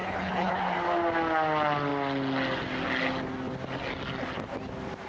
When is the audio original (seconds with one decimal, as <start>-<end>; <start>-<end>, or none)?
0.6-5.1